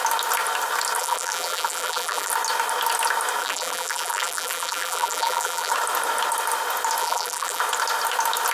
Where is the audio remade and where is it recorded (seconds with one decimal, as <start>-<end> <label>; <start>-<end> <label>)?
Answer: 0.0-1.0 recorded; 1.0-2.3 remade; 2.3-3.4 recorded; 3.4-5.7 remade; 5.7-7.0 recorded; 7.0-7.6 remade; 7.6-8.5 recorded